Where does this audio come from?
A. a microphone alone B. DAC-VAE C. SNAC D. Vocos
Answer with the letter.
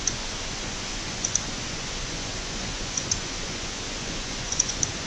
D